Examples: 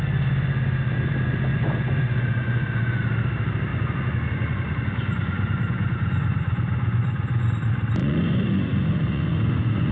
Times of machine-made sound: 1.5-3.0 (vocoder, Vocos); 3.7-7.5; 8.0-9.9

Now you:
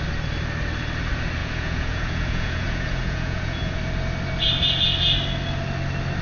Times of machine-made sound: 1.4-3.8 (vocoder, Vocos)

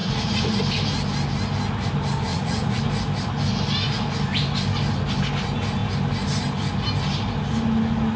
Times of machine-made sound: 0.0-0.6 (vocoder, Vocos); 2.3-2.8

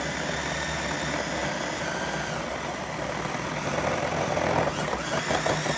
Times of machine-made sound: none

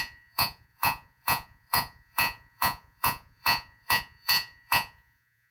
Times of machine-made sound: 0.0-5.5 (vocoder, Vocos)

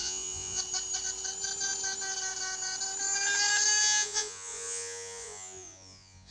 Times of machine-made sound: 0.0-0.6 (vocoder, Vocos); 3.8-6.3

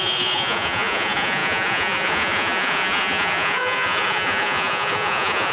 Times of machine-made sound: 0.0-5.5 (vocoder, Vocos)

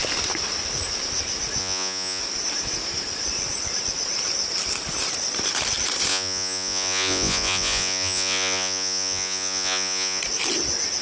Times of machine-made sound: 1.6-2.2 (vocoder, Vocos); 6.1-10.2